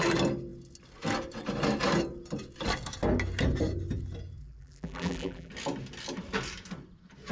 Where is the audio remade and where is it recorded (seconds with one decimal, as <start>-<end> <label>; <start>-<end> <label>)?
0.0-4.4 recorded; 4.4-5.5 remade; 5.5-7.3 recorded